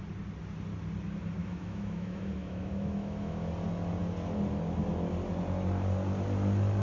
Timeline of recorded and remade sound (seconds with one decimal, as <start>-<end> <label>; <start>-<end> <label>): 0.0-1.4 recorded; 1.4-3.5 remade; 3.5-6.8 recorded